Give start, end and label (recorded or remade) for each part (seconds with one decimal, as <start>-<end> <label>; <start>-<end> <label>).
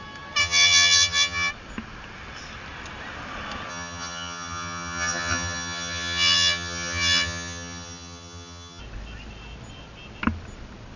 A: 0.0-0.4 recorded; 0.4-1.5 remade; 1.5-3.7 recorded; 3.7-8.8 remade; 8.8-11.0 recorded